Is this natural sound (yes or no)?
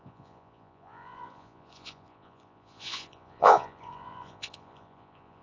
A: no